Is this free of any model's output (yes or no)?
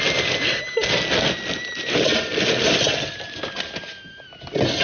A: yes